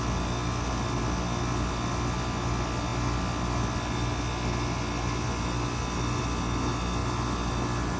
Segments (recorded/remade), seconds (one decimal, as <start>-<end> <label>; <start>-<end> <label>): 0.0-8.0 recorded